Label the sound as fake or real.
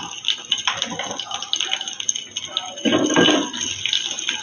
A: real